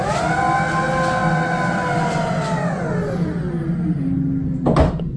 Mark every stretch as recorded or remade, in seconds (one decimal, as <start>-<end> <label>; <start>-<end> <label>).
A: 0.0-5.2 recorded